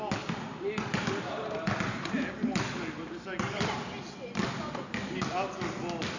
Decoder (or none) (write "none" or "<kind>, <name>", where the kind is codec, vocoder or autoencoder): none